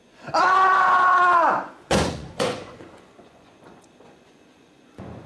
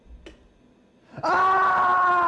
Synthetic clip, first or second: first